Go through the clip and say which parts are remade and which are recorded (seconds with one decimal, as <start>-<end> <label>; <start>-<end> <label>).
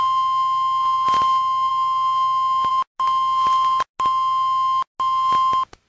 0.0-5.9 recorded